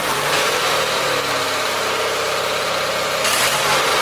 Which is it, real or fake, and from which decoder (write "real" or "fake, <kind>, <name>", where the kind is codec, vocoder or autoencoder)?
fake, vocoder, BigVGAN v2